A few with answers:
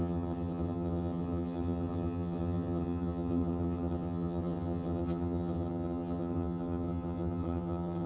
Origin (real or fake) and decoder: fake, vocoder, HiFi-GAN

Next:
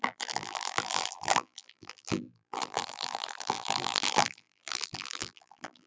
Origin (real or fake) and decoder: fake, vocoder, BigVGAN v2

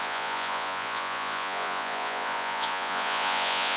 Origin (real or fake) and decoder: fake, vocoder, Vocos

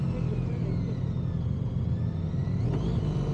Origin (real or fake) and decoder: real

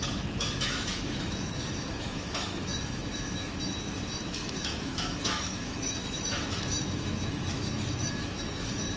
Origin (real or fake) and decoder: fake, autoencoder, DAC-VAE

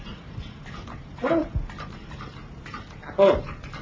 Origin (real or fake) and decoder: real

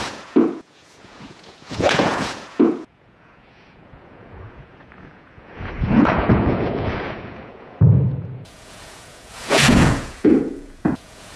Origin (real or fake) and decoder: fake, vocoder, Vocos